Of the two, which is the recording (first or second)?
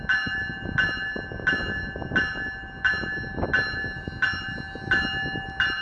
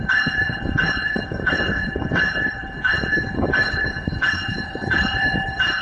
first